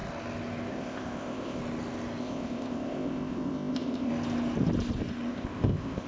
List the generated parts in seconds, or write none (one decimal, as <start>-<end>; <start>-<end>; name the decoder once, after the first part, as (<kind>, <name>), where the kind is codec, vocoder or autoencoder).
0.7-1.6 (codec, ZipCodec); 2.2-4.1; 5.3-6.1